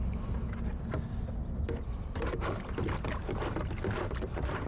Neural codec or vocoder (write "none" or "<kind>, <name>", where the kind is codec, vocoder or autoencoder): none